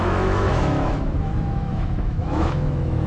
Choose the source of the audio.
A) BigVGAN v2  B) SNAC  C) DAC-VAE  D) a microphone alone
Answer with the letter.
C